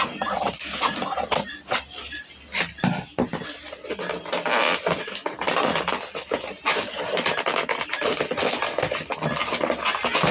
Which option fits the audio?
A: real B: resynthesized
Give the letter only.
A